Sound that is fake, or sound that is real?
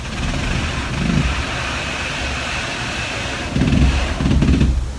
real